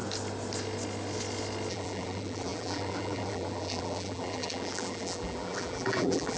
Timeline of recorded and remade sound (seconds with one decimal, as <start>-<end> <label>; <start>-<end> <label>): 0.0-1.7 recorded; 1.7-6.4 remade